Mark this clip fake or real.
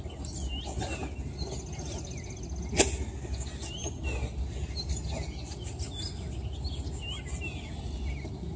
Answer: real